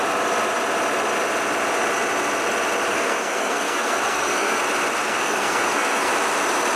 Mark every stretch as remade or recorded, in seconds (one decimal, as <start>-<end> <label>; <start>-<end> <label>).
0.0-2.9 recorded; 2.9-4.6 remade; 4.6-5.0 recorded; 5.0-6.1 remade; 6.1-6.8 recorded